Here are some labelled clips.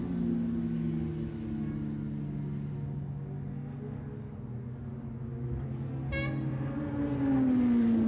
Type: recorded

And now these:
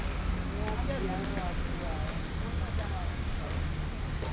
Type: recorded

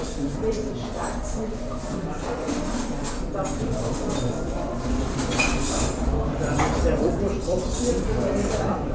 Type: remade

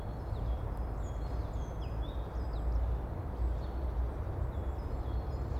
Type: recorded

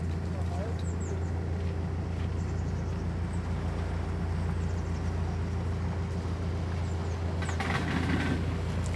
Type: recorded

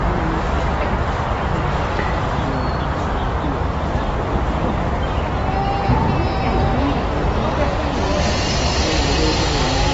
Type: recorded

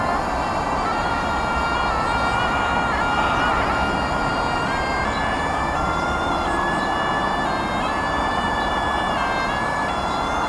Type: recorded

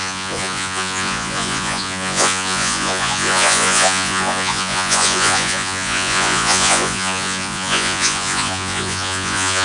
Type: remade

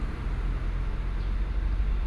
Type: recorded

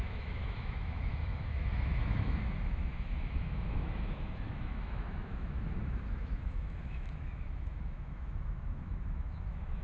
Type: remade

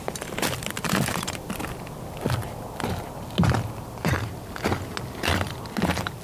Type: recorded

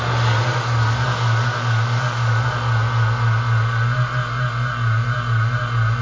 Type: recorded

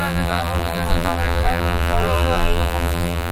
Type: remade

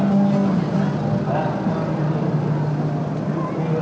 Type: recorded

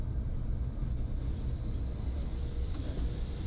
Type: recorded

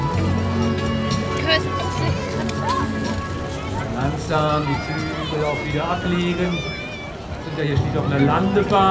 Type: recorded